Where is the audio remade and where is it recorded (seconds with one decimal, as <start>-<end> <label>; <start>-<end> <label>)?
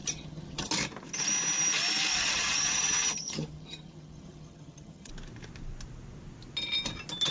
0.0-0.7 remade; 0.7-2.1 recorded; 2.1-5.1 remade; 5.1-7.3 recorded